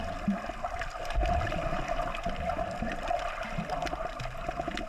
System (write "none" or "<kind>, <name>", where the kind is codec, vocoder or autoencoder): none